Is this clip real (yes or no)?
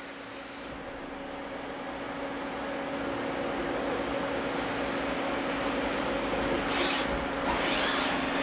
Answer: yes